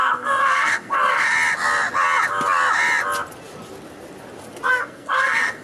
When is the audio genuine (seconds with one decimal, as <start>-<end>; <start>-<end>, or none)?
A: 1.3-4.7